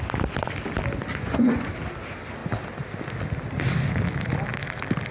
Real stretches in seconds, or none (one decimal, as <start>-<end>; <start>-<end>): 0.0-1.1; 1.7-5.1